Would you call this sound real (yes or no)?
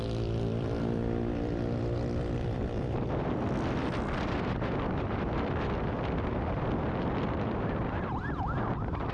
no